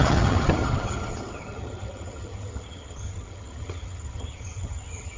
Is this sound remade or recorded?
remade